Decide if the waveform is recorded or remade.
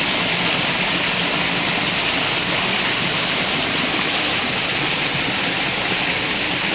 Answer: recorded